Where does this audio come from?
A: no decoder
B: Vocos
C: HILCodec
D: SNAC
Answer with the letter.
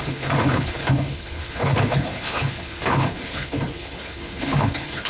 C